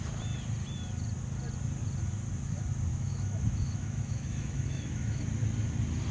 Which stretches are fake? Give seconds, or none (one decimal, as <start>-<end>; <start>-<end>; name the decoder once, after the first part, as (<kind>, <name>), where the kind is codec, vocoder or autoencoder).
2.9-5.2 (autoencoder, DAC-VAE)